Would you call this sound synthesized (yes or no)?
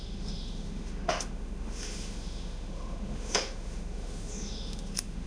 yes